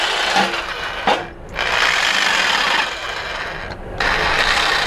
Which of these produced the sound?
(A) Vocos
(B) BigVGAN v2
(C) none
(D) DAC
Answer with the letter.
C